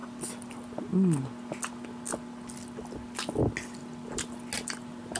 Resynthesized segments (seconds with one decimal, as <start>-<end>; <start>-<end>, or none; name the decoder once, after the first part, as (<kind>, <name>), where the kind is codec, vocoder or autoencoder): none